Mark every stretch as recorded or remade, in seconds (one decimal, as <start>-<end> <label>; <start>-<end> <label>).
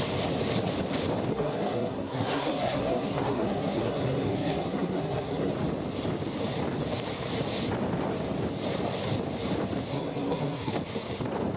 0.0-1.3 recorded; 1.3-5.5 remade; 5.5-9.9 recorded; 9.9-10.7 remade; 10.7-11.6 recorded